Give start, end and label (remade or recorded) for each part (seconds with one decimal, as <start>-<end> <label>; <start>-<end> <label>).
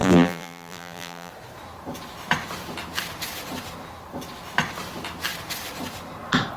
0.0-1.3 remade; 1.3-6.6 recorded